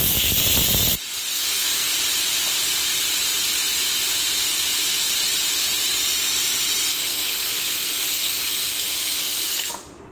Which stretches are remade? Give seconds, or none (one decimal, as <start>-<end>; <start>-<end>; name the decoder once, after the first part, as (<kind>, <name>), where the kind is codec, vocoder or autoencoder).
1.3-1.9 (codec, SNAC); 6.9-9.7